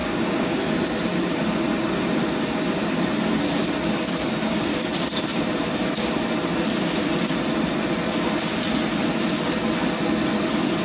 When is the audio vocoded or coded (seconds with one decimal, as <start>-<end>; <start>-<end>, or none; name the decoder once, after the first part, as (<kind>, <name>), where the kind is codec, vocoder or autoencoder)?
0.0-0.6 (codec, DAC)